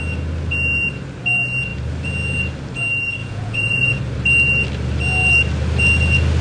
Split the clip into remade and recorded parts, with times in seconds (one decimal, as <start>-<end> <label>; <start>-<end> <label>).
0.0-3.2 recorded; 3.2-4.0 remade; 4.0-6.4 recorded